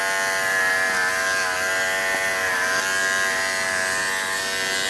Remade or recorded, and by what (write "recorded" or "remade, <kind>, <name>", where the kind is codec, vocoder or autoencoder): recorded